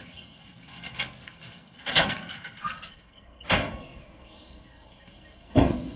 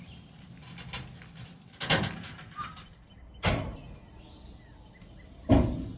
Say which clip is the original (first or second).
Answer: second